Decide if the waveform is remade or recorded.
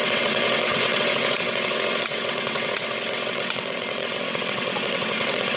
remade